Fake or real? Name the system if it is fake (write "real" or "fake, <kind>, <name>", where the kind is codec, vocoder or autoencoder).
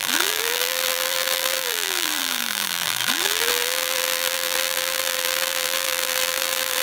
fake, vocoder, BigVGAN v2